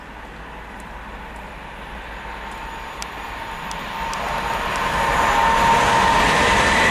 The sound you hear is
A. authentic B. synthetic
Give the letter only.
A